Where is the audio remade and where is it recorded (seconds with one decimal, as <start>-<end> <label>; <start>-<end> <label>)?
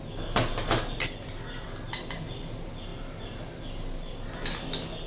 0.0-5.1 recorded